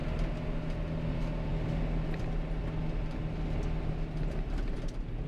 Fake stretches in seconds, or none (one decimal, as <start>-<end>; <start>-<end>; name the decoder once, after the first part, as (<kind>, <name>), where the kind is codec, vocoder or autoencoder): none